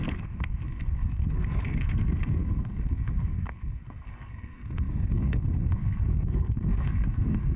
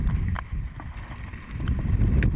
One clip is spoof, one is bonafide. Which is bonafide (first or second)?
second